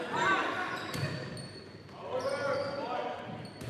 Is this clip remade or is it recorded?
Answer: recorded